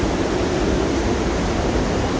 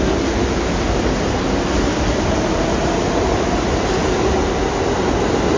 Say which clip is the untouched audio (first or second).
second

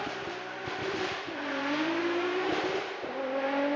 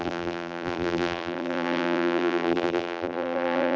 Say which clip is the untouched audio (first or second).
first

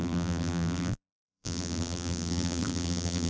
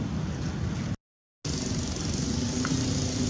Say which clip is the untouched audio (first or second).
second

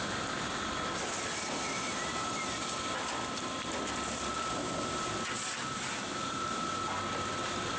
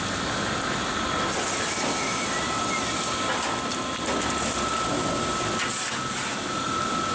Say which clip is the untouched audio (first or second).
second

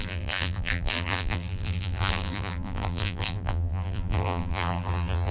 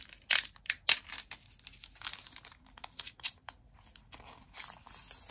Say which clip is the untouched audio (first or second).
second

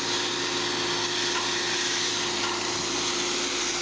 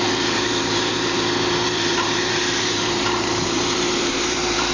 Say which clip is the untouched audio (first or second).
first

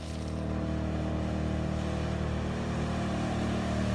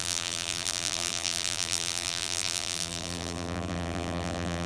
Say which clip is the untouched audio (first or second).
first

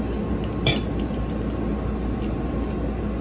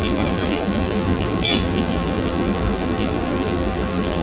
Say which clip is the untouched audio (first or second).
first